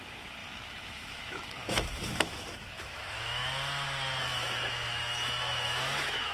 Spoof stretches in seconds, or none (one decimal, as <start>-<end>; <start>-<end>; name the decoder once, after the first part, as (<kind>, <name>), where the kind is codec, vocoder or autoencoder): 0.0-3.4 (autoencoder, DAC-VAE); 4.2-6.3

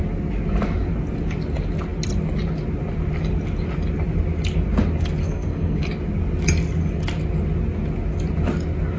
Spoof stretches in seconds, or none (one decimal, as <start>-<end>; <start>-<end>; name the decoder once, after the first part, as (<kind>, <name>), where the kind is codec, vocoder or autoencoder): 5.2-5.9 (codec, SNAC)

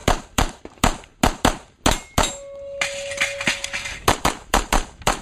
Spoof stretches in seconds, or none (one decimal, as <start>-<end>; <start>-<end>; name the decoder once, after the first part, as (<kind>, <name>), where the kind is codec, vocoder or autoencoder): 0.0-1.1 (vocoder, BigVGAN v2); 4.2-5.2

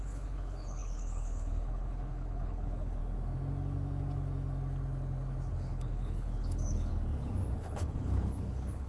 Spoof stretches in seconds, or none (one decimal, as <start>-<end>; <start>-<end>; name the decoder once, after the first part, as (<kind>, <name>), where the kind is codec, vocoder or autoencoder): 0.0-3.0 (codec, HILCodec); 5.5-6.9; 7.6-8.9

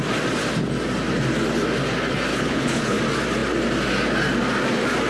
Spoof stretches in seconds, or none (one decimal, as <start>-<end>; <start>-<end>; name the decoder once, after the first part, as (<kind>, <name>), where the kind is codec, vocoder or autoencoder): 2.3-3.0 (codec, HILCodec)

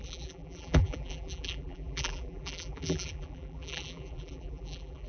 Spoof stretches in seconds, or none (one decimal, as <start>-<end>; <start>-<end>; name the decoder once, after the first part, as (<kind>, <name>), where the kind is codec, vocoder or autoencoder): 0.0-5.1 (vocoder, BigVGAN v2)